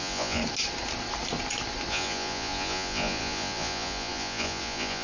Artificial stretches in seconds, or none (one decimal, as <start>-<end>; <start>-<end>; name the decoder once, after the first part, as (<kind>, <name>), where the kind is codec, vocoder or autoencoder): 0.0-0.4 (vocoder, Vocos); 1.9-5.0